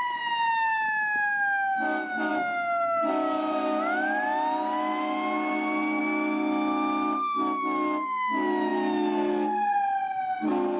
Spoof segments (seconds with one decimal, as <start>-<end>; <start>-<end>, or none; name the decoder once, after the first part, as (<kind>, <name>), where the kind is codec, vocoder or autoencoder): none